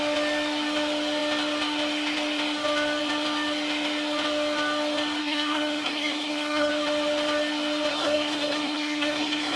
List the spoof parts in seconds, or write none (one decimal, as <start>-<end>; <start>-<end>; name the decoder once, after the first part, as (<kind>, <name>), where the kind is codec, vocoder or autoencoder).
5.2-6.7 (codec, SNAC); 7.9-9.6